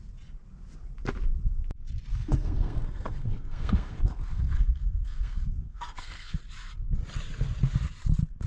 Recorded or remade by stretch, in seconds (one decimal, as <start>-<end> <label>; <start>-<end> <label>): 0.0-2.1 recorded; 2.1-6.4 remade; 6.4-8.5 recorded

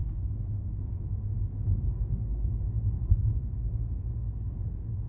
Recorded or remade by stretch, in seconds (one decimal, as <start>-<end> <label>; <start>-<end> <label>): 0.0-1.2 remade; 1.2-1.7 recorded; 1.7-5.1 remade

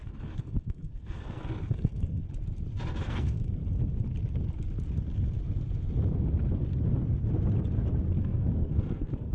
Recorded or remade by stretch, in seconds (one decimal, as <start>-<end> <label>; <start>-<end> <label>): 0.0-2.2 remade; 2.2-3.0 recorded; 3.0-3.6 remade; 3.6-8.2 recorded; 8.2-9.3 remade

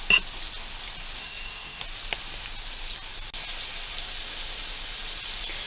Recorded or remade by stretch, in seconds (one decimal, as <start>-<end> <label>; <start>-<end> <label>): 0.0-1.2 recorded; 1.2-1.8 remade; 1.8-5.7 recorded

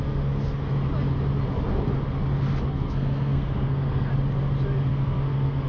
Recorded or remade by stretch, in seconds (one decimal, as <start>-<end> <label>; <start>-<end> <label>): 0.0-0.6 remade; 0.6-2.7 recorded; 2.7-4.1 remade; 4.1-4.9 recorded; 4.9-5.7 remade

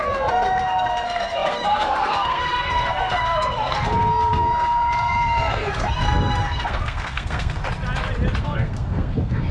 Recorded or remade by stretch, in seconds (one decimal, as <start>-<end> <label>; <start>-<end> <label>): 0.0-7.6 remade; 7.6-8.4 recorded; 8.4-9.5 remade

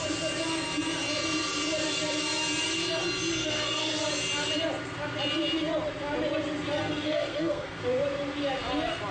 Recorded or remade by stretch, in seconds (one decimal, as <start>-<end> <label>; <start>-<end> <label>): 0.0-3.4 recorded; 3.4-4.1 remade; 4.1-6.8 recorded; 6.8-7.8 remade; 7.8-9.1 recorded